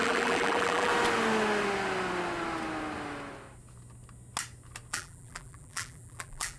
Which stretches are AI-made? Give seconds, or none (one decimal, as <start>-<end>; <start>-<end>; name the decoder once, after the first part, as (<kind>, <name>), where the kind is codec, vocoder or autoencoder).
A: 0.0-0.9 (vocoder, BigVGAN v2); 4.9-6.6